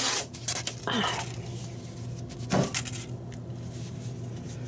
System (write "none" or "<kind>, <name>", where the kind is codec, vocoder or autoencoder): none